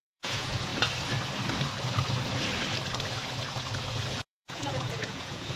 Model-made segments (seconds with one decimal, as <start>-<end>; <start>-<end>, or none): 0.0-0.7; 4.1-5.6